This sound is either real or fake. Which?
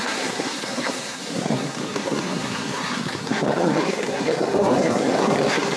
fake